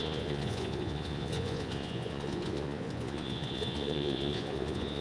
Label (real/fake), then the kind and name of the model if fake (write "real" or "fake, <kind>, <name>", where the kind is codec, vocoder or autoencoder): fake, vocoder, Vocos